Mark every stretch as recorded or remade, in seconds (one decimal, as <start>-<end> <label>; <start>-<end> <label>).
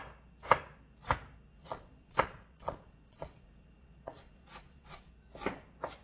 0.0-1.5 recorded; 1.5-5.1 remade; 5.1-6.0 recorded